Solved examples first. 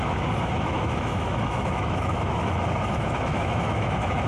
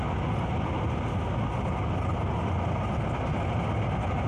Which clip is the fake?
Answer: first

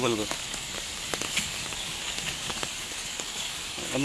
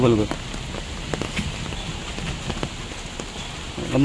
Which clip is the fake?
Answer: first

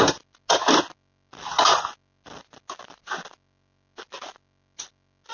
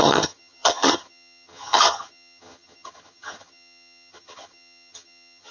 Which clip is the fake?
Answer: second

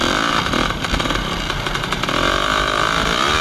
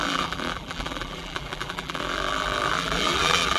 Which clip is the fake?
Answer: second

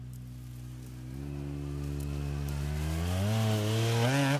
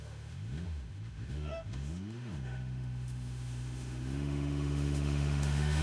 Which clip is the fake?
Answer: second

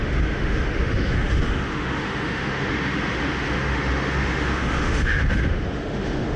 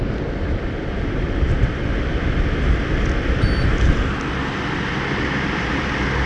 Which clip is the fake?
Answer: first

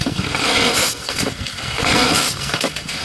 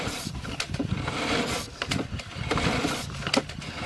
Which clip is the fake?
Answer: first